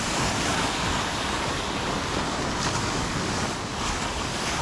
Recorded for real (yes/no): no